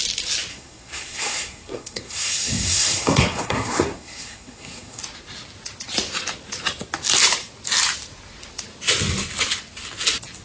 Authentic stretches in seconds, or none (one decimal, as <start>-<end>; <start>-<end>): 0.0-0.5; 5.0-10.4